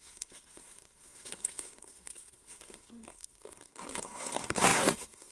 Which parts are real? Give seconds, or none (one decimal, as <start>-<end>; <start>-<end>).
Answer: none